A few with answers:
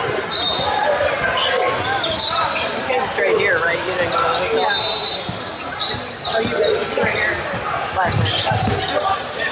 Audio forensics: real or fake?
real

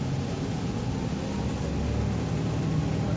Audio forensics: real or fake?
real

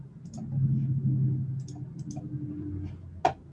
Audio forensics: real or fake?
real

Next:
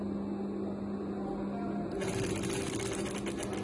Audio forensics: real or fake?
real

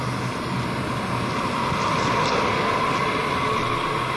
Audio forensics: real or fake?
real